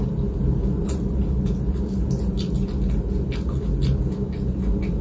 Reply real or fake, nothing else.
real